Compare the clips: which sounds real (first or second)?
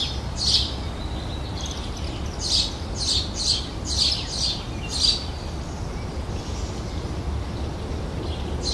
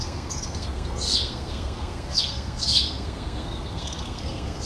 first